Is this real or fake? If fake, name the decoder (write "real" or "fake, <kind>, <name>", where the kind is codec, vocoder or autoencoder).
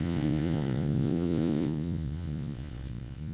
fake, vocoder, Vocos